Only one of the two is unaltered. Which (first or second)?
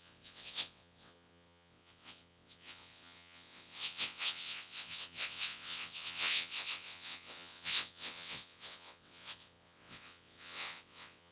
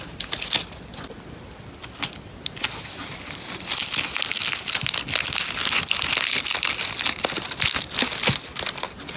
second